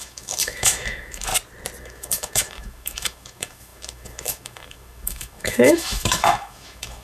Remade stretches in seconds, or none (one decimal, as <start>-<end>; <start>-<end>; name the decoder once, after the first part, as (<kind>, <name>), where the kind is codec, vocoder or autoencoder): 0.0-1.3 (autoencoder, DAC-VAE); 1.8-7.0